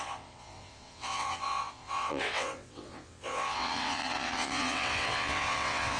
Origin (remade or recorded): remade